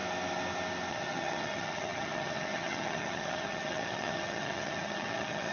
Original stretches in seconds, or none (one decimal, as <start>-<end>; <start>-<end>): 0.0-0.9